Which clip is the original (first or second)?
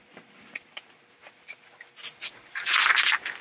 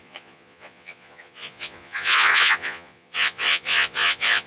first